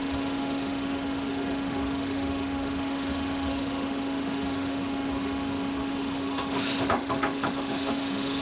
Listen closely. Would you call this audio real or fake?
fake